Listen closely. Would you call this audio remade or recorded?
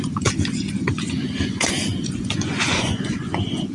remade